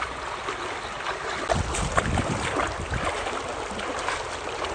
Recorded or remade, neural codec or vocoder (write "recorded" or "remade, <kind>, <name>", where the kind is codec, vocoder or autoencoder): recorded